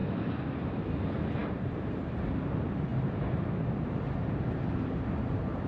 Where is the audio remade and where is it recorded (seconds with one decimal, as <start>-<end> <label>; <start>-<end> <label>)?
0.0-0.6 recorded; 0.6-5.7 remade